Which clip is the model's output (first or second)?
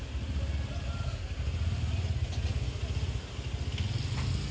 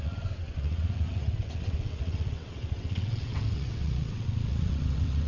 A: second